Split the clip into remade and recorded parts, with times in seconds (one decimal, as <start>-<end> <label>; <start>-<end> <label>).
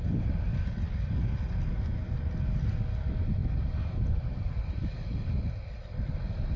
0.0-6.6 recorded